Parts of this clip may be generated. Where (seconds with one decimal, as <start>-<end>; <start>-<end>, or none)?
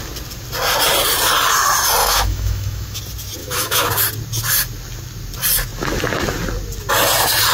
2.0-3.0; 3.4-3.9